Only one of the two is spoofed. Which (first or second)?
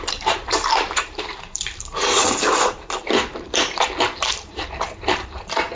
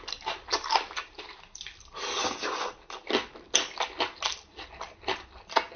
first